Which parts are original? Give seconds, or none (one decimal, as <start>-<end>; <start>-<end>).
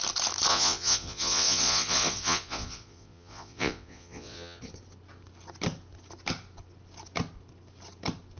0.0-0.5; 4.6-8.4